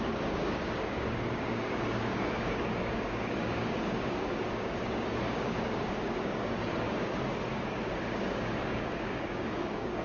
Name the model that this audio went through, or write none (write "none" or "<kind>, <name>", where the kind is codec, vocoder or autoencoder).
codec, DAC